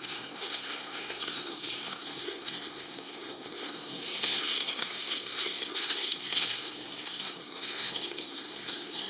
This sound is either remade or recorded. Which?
remade